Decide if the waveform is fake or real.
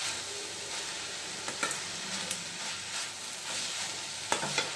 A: real